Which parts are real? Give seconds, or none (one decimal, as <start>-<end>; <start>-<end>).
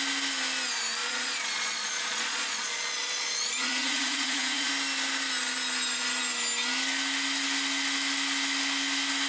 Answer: 0.0-1.0; 4.7-9.3